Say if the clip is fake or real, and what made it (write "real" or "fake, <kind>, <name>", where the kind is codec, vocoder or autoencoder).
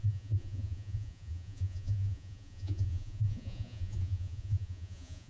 fake, vocoder, Vocos